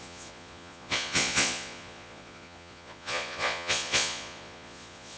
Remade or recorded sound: remade